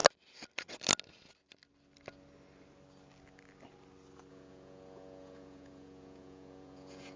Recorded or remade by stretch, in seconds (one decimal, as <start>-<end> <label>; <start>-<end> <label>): 0.0-4.3 recorded; 4.3-7.2 remade